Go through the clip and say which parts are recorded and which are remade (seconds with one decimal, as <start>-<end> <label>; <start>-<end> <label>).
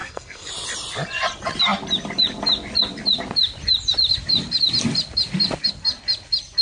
0.0-0.5 remade; 0.5-6.6 recorded